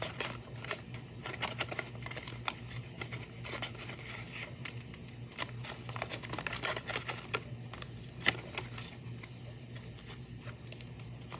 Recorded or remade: recorded